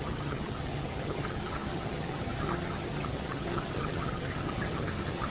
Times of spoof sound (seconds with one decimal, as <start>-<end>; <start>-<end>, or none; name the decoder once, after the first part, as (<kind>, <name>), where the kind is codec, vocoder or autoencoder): 0.0-5.3 (vocoder, HiFi-GAN)